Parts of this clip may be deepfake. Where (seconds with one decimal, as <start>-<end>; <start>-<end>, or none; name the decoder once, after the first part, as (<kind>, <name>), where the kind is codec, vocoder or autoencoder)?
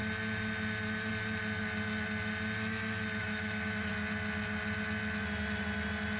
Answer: 3.2-3.9 (autoencoder, DAC-VAE)